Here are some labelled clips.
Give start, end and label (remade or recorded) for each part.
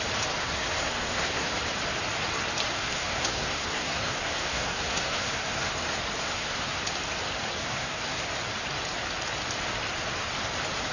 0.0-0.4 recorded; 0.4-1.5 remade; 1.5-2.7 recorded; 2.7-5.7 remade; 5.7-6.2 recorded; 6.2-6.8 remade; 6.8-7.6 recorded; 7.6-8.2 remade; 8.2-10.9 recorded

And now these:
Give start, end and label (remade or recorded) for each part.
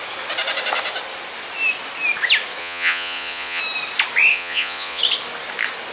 0.0-2.6 recorded; 2.6-3.6 remade; 3.6-4.3 recorded; 4.3-5.0 remade; 5.0-5.9 recorded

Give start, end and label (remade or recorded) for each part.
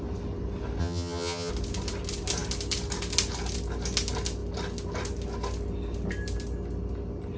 0.0-0.8 recorded; 0.8-1.5 remade; 1.5-7.4 recorded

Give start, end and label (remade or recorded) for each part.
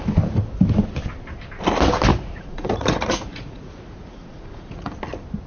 0.0-2.1 recorded; 2.1-4.9 remade; 4.9-5.5 recorded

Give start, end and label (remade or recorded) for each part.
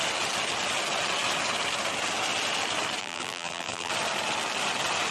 0.0-3.0 recorded; 3.0-3.9 remade; 3.9-5.1 recorded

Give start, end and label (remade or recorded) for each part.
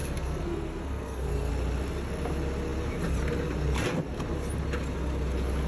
0.0-1.5 remade; 1.5-5.7 recorded